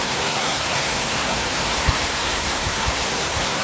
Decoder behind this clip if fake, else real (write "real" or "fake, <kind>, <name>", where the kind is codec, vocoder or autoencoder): fake, codec, SNAC